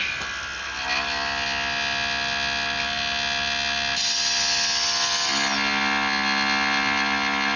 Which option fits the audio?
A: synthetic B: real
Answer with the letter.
B